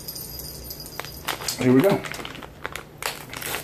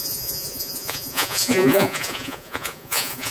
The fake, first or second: second